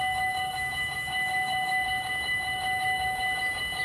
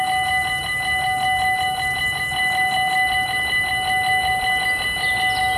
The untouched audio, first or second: second